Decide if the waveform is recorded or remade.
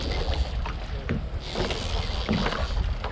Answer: recorded